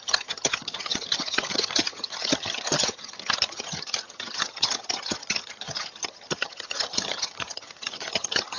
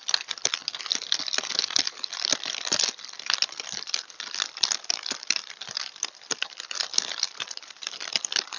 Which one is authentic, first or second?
second